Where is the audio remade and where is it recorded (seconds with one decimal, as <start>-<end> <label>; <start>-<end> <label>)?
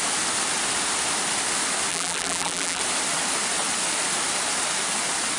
0.0-1.9 recorded; 1.9-2.8 remade; 2.8-5.4 recorded